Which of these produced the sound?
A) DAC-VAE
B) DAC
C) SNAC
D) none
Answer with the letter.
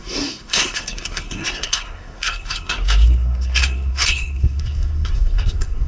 C